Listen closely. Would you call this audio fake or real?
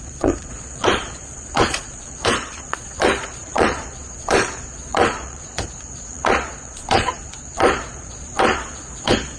fake